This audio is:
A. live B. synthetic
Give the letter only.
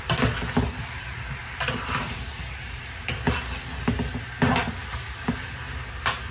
A